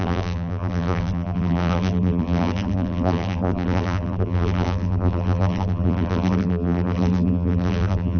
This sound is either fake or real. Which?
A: fake